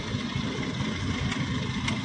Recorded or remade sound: recorded